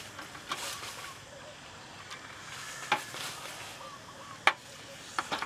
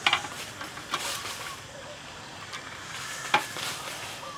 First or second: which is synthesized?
second